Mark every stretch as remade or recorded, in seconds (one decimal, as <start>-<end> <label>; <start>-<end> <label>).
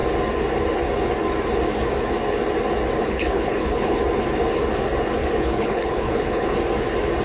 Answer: 0.0-3.0 recorded; 3.0-4.0 remade; 4.0-5.2 recorded; 5.2-6.6 remade; 6.6-7.2 recorded